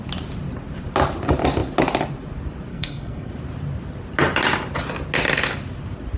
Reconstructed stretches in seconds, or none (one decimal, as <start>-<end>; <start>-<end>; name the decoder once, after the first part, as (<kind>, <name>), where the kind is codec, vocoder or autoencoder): 2.7-3.3 (codec, SNAC)